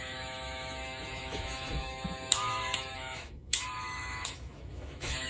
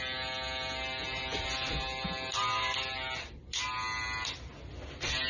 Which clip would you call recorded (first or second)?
second